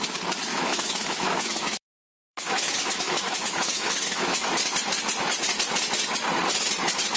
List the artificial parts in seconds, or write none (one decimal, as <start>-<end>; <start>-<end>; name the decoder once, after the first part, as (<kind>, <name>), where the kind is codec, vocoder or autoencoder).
0.5-4.6 (autoencoder, DAC-VAE)